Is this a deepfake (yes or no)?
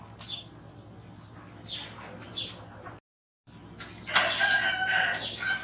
no